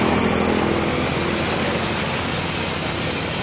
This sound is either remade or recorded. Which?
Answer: recorded